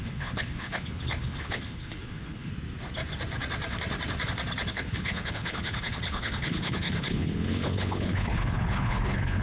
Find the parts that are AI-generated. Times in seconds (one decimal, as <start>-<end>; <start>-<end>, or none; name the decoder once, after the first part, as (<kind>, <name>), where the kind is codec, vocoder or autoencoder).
0.0-2.5 (codec, HILCodec); 4.7-9.4